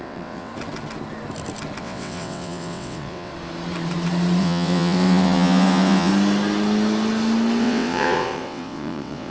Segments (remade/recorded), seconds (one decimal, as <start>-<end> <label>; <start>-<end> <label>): 0.0-0.5 remade; 0.5-1.8 recorded; 1.8-3.3 remade; 3.3-4.4 recorded; 4.4-6.1 remade; 6.1-7.6 recorded; 7.6-9.3 remade

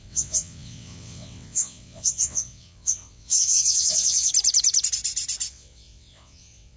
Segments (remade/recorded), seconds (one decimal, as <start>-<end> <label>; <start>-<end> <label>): 0.0-4.3 remade; 4.3-5.5 recorded; 5.5-6.8 remade

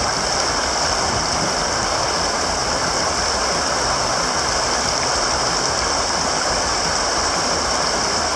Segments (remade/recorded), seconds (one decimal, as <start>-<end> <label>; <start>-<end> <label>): 0.0-8.4 recorded

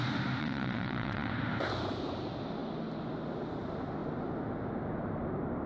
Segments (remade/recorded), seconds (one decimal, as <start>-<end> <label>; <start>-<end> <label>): 0.0-0.4 recorded; 0.4-1.3 remade; 1.3-5.7 recorded